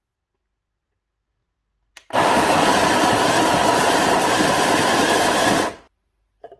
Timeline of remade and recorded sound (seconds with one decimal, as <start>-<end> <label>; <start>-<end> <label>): 0.0-3.6 recorded; 3.6-5.4 remade; 5.4-6.6 recorded